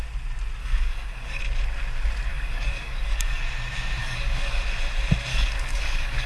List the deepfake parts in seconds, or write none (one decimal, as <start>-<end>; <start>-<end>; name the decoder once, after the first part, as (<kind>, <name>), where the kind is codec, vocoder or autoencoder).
0.6-1.4 (codec, DAC); 2.3-3.4; 4.0-4.6; 5.3-6.3